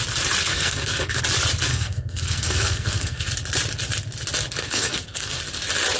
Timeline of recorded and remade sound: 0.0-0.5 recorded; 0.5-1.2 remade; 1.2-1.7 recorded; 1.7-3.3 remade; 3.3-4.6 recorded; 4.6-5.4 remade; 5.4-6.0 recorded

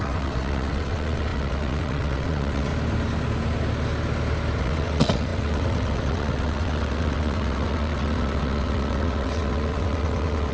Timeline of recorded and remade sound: 0.0-2.7 remade; 2.7-4.6 recorded; 4.6-10.5 remade

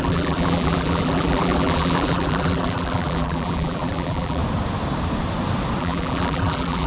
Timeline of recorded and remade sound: 0.0-4.4 remade; 4.4-5.8 recorded; 5.8-6.9 remade

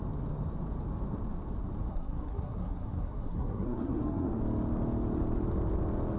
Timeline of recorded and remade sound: 0.0-1.9 recorded; 1.9-4.4 remade; 4.4-6.2 recorded